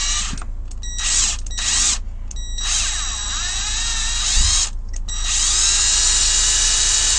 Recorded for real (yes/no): yes